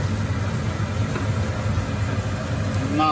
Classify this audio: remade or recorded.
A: recorded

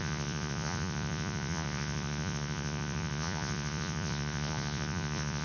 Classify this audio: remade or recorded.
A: remade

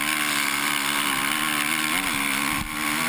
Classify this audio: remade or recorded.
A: recorded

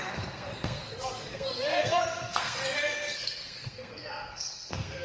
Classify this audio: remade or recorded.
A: remade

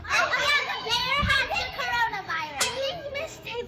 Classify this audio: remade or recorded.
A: remade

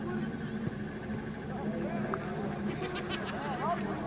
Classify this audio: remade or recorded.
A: recorded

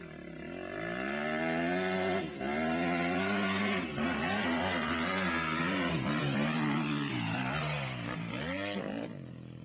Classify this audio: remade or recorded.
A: recorded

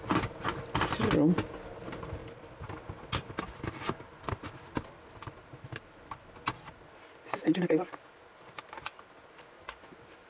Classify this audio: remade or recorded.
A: recorded